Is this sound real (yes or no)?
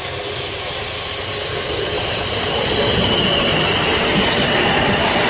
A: yes